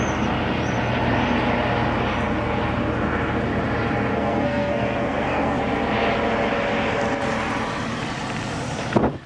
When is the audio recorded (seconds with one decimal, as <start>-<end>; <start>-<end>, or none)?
0.0-4.1; 5.6-9.3